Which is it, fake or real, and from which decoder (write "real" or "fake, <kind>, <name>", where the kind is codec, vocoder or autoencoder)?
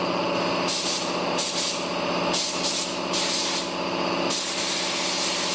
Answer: real